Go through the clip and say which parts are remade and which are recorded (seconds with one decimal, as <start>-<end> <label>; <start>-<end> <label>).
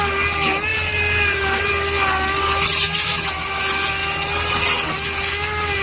0.0-0.7 recorded; 0.7-1.7 remade; 1.7-5.8 recorded